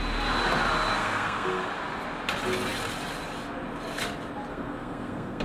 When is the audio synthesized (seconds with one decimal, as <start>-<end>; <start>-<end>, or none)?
1.0-1.7; 4.5-5.4